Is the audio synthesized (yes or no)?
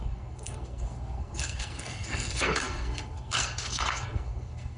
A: yes